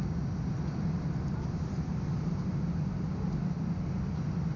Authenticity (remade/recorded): recorded